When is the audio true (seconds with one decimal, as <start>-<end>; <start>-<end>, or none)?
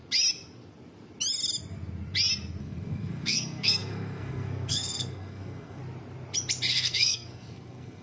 0.0-2.6; 5.8-6.7